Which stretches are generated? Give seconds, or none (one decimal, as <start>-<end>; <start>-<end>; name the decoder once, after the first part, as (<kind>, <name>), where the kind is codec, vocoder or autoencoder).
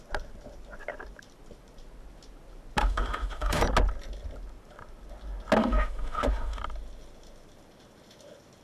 2.8-3.6 (autoencoder, DAC-VAE); 5.6-6.6